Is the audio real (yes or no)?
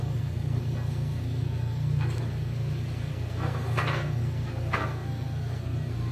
no